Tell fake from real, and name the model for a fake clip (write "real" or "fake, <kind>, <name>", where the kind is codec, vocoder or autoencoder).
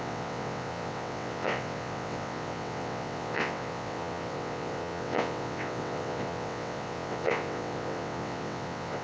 fake, vocoder, WaveNeXt